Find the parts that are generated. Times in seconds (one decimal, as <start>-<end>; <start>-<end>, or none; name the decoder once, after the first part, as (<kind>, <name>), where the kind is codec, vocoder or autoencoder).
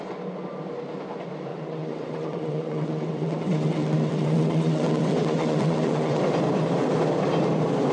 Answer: 1.5-6.2 (vocoder, WaveNeXt)